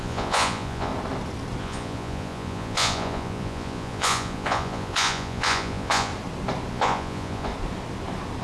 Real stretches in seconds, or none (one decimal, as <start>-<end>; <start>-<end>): 0.9-1.6; 6.1-6.7; 7.5-8.4